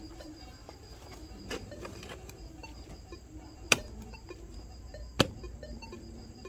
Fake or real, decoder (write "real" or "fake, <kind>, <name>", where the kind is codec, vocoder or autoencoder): fake, vocoder, BigVGAN v2